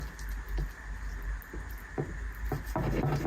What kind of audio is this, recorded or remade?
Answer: recorded